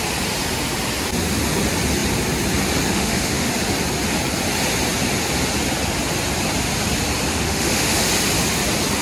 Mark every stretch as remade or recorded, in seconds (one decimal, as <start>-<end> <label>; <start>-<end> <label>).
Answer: 0.0-2.9 recorded; 2.9-3.5 remade; 3.5-7.3 recorded; 7.3-8.1 remade; 8.1-9.0 recorded

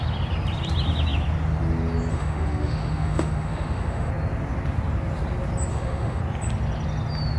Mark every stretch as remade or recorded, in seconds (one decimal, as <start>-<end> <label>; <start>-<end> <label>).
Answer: 0.0-2.1 recorded; 2.1-4.1 remade; 4.1-5.7 recorded; 5.7-6.2 remade; 6.2-7.4 recorded

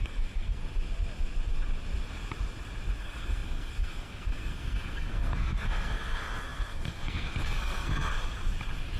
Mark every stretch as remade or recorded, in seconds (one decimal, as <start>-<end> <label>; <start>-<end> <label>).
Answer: 0.0-0.6 remade; 0.6-3.0 recorded; 3.0-8.1 remade; 8.1-9.0 recorded